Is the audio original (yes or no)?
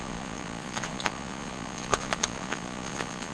no